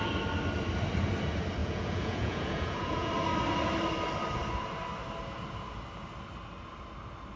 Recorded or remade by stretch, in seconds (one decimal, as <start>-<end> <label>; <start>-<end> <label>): 0.0-1.6 recorded; 1.6-3.1 remade; 3.1-7.4 recorded